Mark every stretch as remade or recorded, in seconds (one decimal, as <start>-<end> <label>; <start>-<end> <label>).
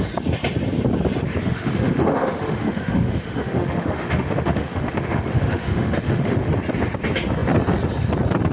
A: 0.0-1.4 recorded; 1.4-6.5 remade; 6.5-8.5 recorded